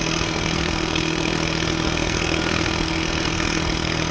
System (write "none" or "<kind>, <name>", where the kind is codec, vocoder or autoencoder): codec, SNAC